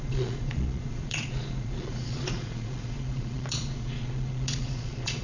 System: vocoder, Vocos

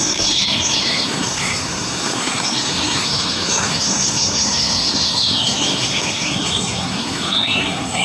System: codec, SNAC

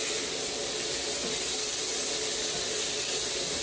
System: none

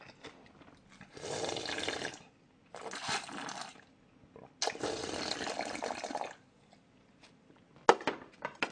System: none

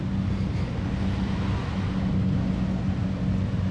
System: none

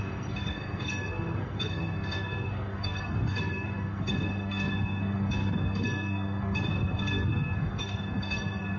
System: codec, SNAC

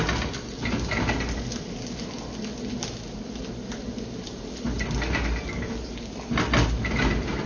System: none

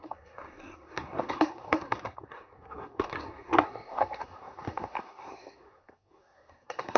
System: codec, SNAC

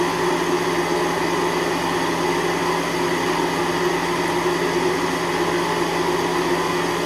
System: none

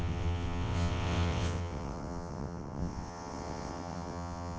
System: vocoder, WaveNeXt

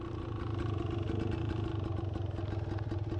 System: none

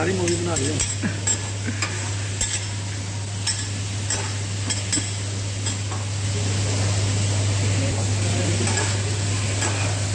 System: none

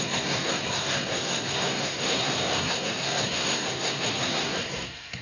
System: codec, SNAC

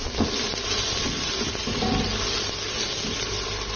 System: none